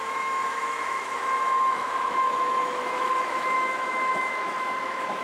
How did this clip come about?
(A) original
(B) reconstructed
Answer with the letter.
B